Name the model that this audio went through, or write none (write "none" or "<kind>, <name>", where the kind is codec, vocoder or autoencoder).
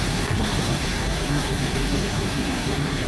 codec, SNAC